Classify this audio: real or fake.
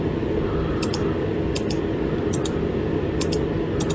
real